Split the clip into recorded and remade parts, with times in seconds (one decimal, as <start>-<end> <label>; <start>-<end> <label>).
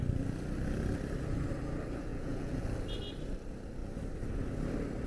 0.0-2.1 recorded; 2.1-2.6 remade; 2.6-5.1 recorded